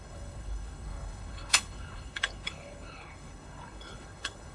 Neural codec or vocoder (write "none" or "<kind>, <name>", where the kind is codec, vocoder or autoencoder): codec, HILCodec